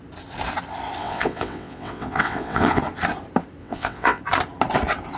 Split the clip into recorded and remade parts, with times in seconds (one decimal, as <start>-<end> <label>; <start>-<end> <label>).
0.0-1.0 recorded; 1.0-2.8 remade; 2.8-3.6 recorded; 3.6-4.2 remade; 4.2-5.2 recorded